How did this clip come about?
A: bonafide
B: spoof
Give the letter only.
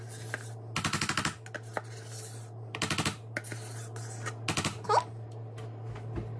A